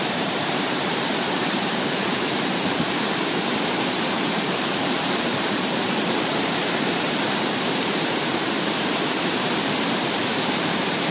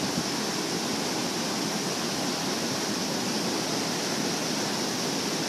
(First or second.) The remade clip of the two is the first